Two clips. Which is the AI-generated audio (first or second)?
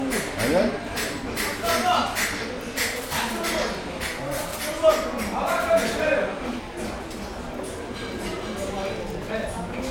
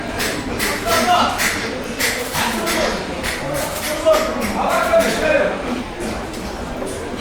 second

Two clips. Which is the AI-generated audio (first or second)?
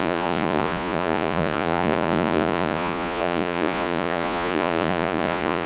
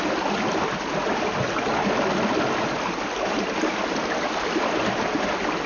first